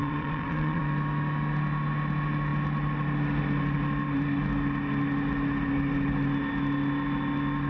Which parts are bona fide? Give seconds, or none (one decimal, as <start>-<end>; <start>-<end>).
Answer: 0.8-7.7